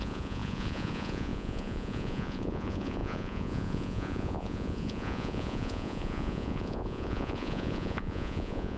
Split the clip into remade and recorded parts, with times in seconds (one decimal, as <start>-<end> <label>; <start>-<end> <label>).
0.0-8.8 remade